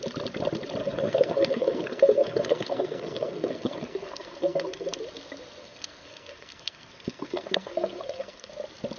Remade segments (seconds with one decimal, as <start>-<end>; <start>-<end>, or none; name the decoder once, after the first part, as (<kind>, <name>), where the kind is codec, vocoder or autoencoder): 0.8-5.0 (codec, SNAC); 5.6-8.5